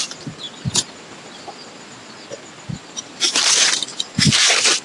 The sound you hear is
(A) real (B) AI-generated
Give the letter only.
A